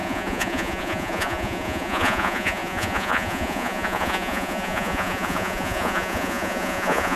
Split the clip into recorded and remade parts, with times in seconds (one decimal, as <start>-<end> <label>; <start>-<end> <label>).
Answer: 0.0-7.2 remade